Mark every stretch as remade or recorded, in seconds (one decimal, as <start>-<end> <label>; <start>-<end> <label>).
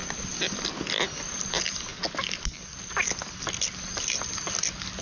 0.0-1.9 remade; 1.9-2.8 recorded; 2.8-5.0 remade